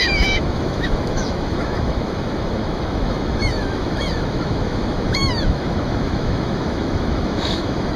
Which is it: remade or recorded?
remade